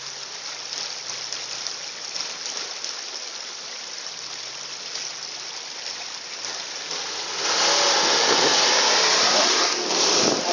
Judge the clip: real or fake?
real